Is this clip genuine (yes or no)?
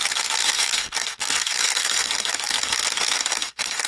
no